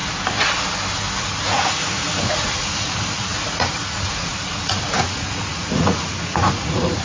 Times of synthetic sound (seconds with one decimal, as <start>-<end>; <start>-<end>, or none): 1.2-7.0